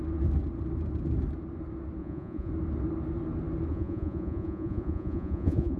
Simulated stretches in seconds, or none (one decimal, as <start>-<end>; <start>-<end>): 2.0-2.5; 3.7-5.8